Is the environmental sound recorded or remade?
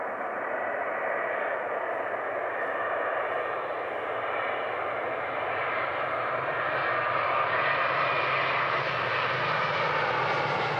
recorded